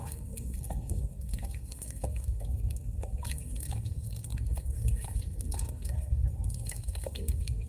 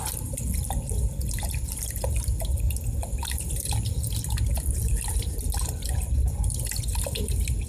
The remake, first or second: first